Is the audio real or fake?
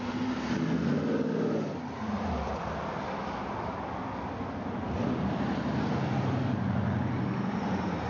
real